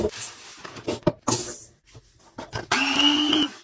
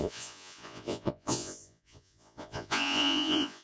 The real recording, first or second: first